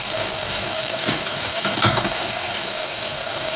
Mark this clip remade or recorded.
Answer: remade